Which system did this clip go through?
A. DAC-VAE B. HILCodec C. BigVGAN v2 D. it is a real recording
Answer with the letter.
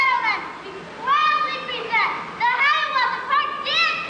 D